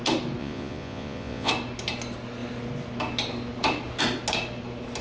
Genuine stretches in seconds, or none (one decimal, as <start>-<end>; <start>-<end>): 0.0-0.4; 1.5-5.0